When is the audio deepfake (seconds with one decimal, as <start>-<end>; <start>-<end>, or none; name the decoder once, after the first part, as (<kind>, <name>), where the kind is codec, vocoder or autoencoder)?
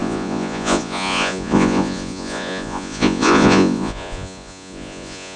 0.0-5.4 (vocoder, Vocos)